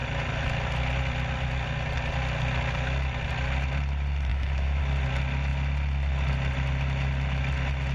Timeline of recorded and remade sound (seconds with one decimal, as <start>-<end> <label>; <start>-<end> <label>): 0.0-4.3 recorded; 4.3-4.8 remade; 4.8-7.9 recorded

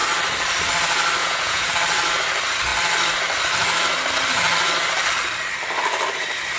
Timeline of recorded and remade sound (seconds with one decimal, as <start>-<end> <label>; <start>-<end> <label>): 0.0-1.2 recorded; 1.2-1.7 remade; 1.7-6.6 recorded

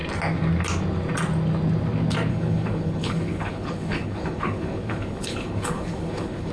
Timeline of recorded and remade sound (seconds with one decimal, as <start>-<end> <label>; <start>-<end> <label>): 0.0-2.3 recorded; 2.3-6.5 remade

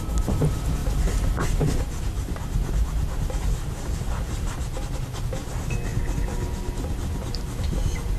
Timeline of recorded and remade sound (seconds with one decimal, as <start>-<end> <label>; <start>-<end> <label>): 0.0-8.2 recorded

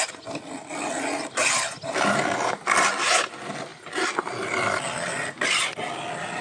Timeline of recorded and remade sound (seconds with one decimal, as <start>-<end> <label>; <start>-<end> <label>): 0.0-6.4 recorded

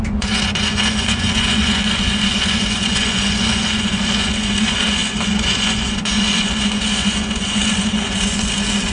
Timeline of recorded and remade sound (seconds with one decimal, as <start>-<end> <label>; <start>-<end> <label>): 0.0-8.9 remade